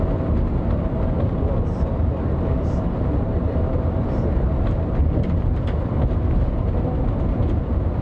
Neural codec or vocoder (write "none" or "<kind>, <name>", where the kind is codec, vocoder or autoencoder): none